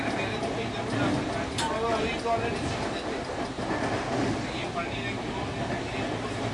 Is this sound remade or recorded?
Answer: recorded